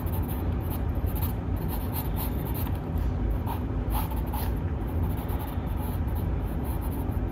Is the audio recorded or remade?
recorded